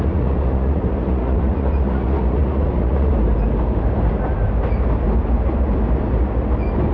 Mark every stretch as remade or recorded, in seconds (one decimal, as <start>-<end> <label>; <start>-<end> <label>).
0.0-3.1 remade; 3.1-6.9 recorded